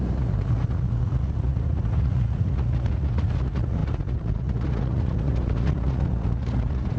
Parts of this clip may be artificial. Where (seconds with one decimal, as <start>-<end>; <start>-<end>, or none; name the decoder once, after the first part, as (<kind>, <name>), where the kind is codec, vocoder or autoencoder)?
0.0-7.0 (vocoder, Vocos)